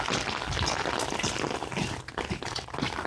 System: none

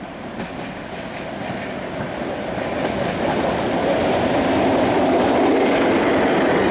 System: none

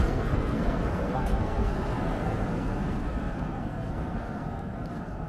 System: codec, SNAC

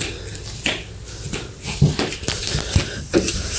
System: none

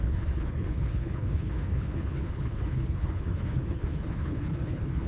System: codec, HILCodec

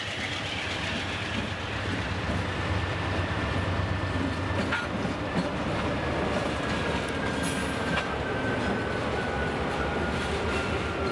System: none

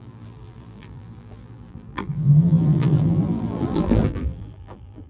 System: vocoder, BigVGAN v2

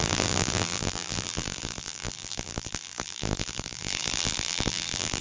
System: vocoder, BigVGAN v2